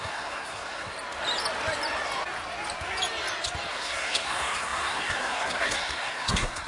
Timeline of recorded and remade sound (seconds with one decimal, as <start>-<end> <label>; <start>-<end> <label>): 0.0-0.9 remade; 0.9-3.7 recorded; 3.7-6.7 remade